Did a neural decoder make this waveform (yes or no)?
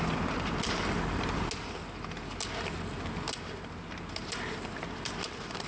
no